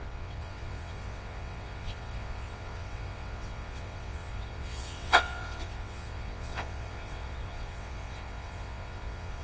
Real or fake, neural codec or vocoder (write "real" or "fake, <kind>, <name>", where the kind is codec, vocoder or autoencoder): fake, vocoder, WaveNeXt